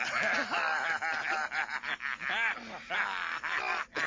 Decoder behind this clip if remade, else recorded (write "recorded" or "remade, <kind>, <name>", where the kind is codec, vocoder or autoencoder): recorded